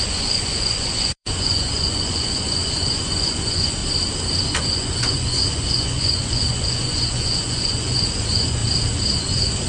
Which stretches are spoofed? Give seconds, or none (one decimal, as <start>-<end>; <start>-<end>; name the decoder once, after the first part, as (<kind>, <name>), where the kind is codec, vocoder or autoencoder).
0.0-3.8 (vocoder, Vocos); 4.6-8.6; 9.2-9.7